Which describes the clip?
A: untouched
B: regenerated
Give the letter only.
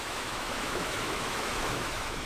B